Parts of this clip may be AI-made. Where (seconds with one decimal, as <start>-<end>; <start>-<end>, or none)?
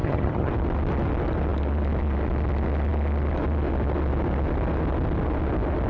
0.0-0.5